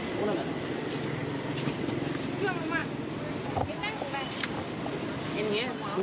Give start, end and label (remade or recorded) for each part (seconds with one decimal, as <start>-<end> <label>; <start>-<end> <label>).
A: 0.0-6.0 recorded